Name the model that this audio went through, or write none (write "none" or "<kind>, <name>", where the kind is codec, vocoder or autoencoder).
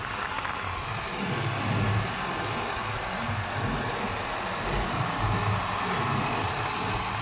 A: none